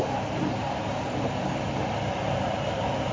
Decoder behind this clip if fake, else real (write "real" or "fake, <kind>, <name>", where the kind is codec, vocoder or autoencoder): real